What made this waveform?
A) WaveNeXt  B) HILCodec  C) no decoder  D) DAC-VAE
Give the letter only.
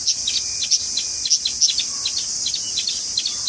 C